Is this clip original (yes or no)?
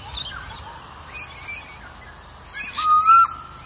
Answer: yes